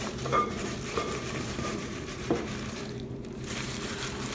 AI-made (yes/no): yes